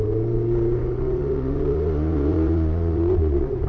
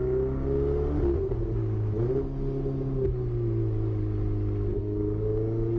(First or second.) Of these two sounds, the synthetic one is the first